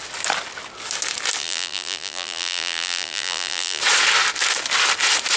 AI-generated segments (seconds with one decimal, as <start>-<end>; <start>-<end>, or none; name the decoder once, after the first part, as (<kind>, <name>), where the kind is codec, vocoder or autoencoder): 1.4-3.8 (vocoder, BigVGAN v2)